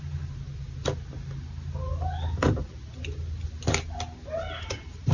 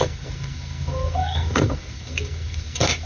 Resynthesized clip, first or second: second